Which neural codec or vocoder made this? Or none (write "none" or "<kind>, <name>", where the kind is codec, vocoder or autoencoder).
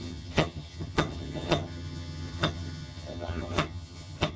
vocoder, HiFi-GAN